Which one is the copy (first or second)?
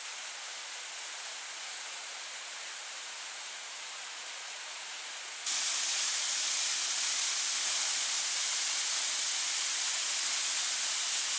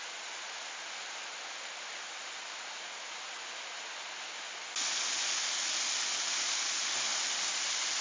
first